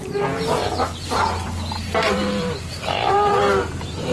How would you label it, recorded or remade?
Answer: recorded